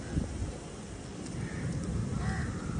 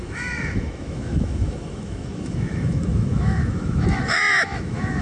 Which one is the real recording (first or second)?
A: first